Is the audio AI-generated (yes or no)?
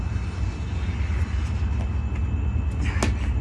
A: no